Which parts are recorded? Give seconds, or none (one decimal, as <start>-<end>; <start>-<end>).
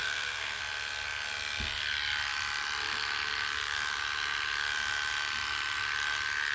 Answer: 0.6-6.5